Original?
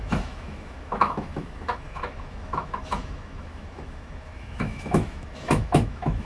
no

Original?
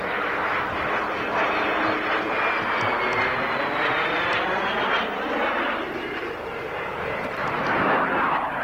yes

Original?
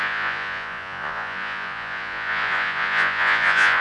no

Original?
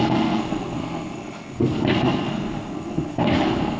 no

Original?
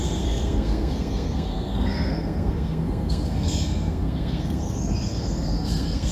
no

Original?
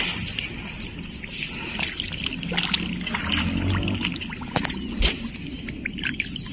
yes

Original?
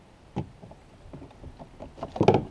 yes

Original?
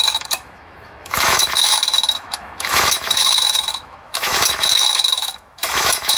no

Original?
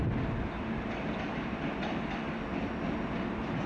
yes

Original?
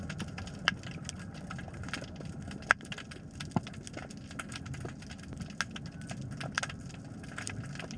yes